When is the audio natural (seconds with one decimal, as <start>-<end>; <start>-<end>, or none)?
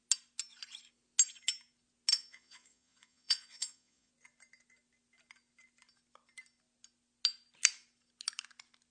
0.0-2.1; 4.1-8.9